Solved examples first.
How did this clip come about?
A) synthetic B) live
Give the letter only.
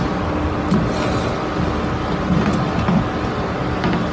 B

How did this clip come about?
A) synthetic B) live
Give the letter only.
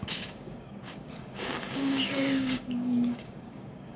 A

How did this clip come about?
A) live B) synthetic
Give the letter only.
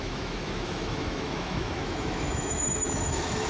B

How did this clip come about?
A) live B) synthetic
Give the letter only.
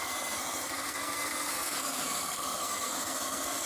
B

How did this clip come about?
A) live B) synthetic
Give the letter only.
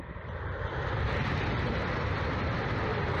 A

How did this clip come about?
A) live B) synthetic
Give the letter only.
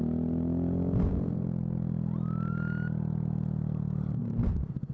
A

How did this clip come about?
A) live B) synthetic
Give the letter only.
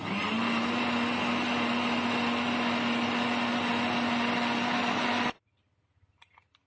A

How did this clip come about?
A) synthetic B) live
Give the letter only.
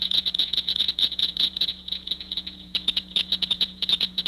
A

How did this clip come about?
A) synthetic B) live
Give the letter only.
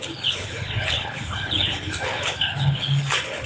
A